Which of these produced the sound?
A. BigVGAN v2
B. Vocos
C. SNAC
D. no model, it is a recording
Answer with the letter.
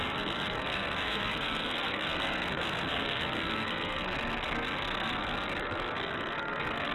C